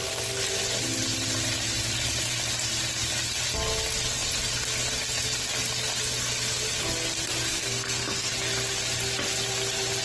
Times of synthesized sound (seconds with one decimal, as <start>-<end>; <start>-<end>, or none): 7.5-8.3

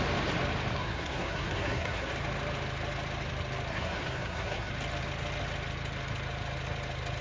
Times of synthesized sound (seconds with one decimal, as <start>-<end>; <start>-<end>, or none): 0.7-2.1; 3.7-4.7

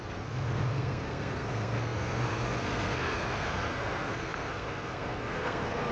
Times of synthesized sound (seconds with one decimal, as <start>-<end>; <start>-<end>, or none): 0.0-5.9

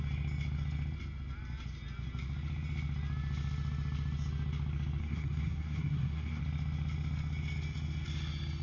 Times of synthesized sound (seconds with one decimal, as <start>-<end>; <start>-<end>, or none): 5.0-6.4